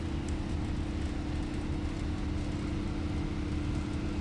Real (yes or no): yes